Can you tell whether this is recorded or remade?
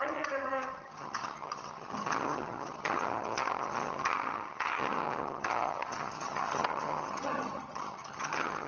remade